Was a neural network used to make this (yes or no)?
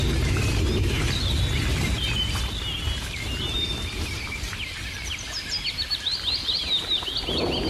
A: no